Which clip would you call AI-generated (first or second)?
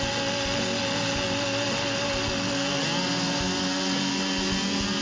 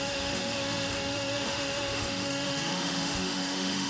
second